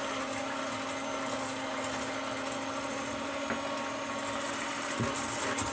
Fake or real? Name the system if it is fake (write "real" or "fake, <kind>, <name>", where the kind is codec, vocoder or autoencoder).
real